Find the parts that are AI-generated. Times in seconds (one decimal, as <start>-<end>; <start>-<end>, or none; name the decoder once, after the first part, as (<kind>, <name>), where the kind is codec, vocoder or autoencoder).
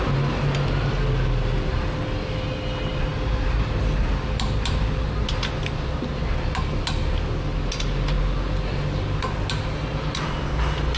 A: none